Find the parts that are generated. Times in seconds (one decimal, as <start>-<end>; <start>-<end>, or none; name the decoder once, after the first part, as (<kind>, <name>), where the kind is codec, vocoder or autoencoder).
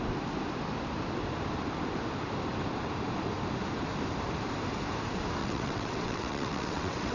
5.4-7.1 (vocoder, WaveNeXt)